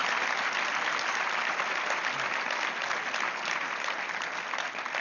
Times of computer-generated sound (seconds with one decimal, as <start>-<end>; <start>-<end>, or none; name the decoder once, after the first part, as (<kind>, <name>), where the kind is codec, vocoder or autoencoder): none